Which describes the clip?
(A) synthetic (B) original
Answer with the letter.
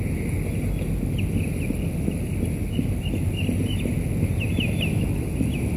B